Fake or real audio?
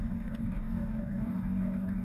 fake